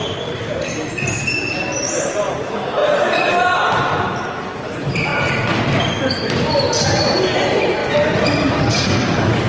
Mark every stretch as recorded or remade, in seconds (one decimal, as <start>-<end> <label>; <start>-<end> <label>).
0.0-2.8 remade; 2.8-3.5 recorded; 3.5-5.1 remade; 5.1-5.9 recorded; 5.9-9.5 remade